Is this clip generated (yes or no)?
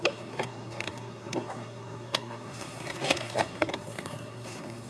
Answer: yes